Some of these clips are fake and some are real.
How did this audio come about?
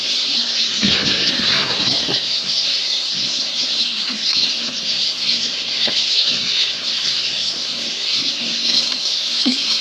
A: fake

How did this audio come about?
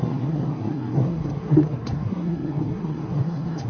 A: fake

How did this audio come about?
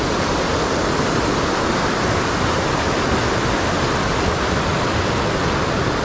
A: real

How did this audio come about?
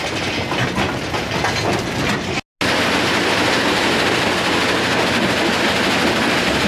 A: real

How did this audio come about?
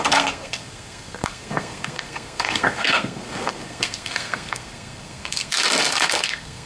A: fake